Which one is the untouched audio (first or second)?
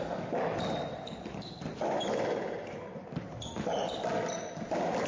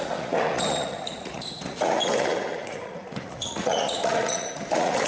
first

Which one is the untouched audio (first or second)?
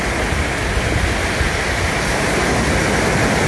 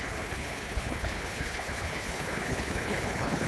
first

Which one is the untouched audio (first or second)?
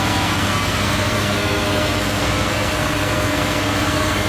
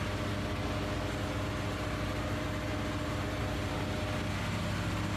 second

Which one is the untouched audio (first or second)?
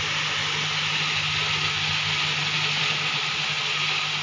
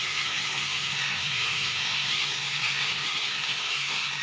first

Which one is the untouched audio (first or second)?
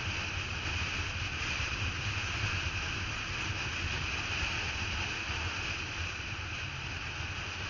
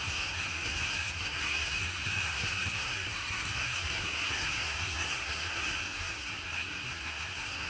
first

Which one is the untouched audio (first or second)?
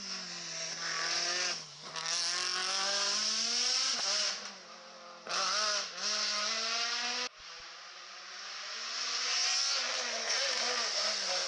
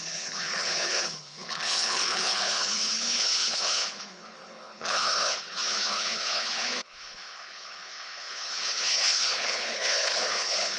first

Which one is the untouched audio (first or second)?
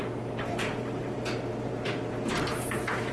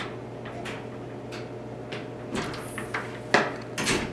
second